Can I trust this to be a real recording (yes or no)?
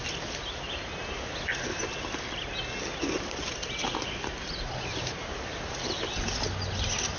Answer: yes